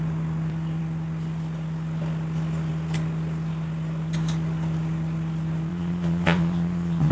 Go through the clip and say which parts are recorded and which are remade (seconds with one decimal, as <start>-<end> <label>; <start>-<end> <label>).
0.0-5.7 recorded; 5.7-7.1 remade